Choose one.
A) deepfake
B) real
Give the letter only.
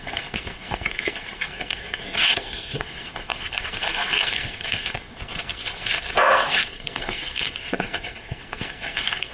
A